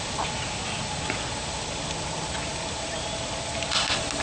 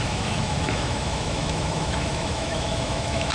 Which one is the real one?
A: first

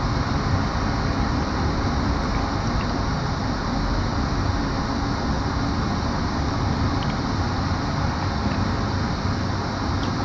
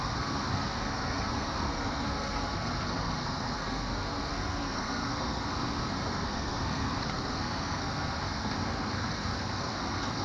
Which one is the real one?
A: first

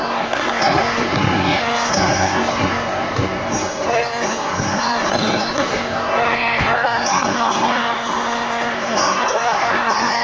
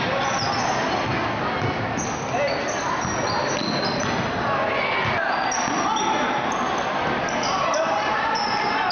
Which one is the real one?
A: second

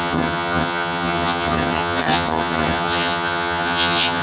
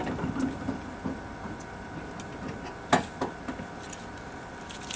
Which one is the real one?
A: second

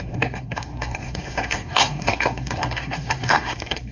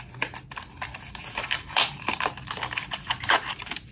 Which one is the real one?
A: second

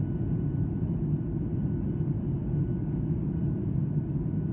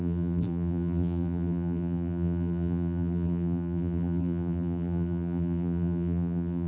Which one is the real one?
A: first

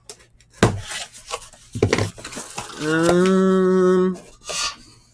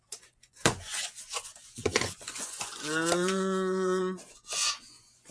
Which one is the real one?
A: first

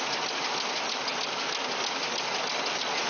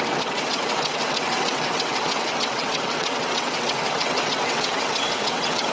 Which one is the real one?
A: first